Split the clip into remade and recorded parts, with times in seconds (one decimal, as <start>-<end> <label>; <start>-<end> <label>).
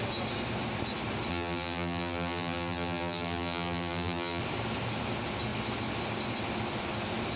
0.0-1.3 recorded; 1.3-4.4 remade; 4.4-7.4 recorded